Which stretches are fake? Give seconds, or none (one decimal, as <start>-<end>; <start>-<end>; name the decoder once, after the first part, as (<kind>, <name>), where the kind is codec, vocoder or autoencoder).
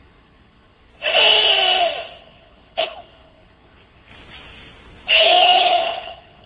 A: 0.0-0.9 (codec, HILCodec); 2.2-4.1; 5.1-6.5